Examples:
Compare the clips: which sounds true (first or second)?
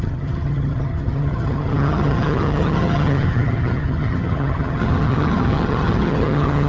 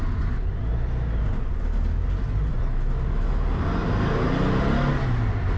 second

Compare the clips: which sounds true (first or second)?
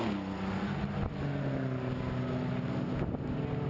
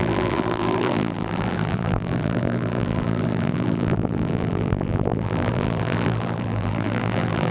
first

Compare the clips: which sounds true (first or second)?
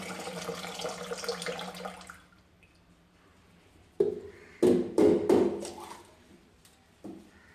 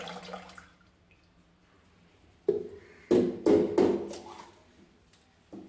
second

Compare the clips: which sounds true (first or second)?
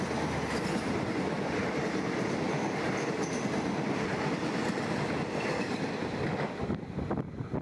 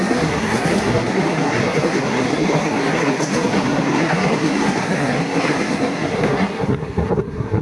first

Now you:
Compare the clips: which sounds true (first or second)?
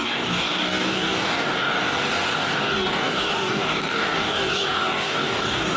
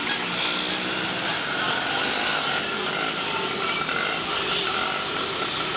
second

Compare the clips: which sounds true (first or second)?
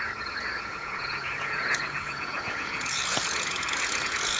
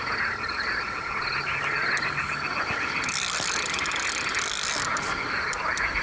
second